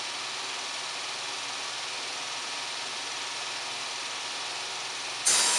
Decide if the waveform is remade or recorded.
recorded